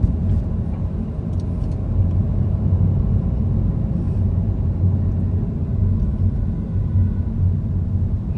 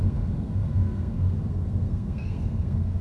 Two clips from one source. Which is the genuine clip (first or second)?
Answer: first